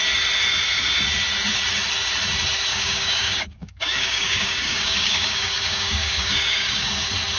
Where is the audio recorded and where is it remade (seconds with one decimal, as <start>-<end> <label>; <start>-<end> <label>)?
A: 0.0-2.7 recorded; 2.7-6.9 remade; 6.9-7.4 recorded